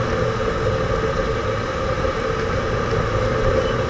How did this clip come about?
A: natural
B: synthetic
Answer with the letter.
A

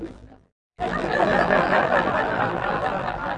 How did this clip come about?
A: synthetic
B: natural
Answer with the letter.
A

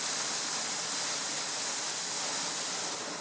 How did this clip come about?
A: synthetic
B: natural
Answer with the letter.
B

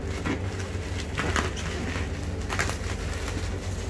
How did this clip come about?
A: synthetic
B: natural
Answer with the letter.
B